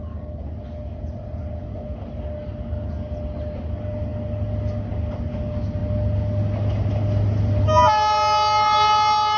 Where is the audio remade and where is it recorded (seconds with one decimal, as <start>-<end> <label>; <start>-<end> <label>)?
0.0-9.4 recorded